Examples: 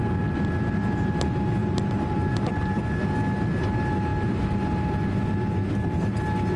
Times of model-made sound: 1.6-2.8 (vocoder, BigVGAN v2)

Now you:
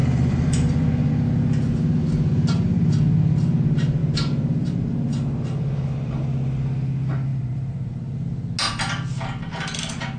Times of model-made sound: 0.0-1.1 (vocoder, BigVGAN v2); 4.0-6.2; 7.3-7.9

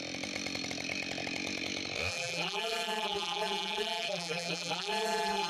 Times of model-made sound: 2.1-5.5 (vocoder, BigVGAN v2)

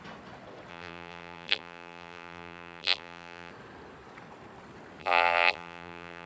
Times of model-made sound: 0.7-3.5 (vocoder, BigVGAN v2); 5.0-6.3

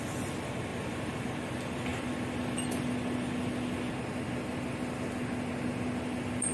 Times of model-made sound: 0.7-1.4 (vocoder, BigVGAN v2)